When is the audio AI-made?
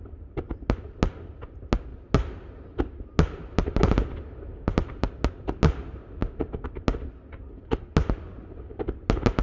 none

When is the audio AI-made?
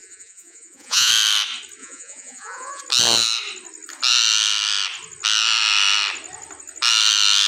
0.0-1.1; 1.8-2.8